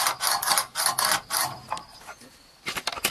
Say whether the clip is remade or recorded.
recorded